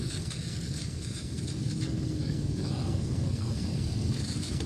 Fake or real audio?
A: fake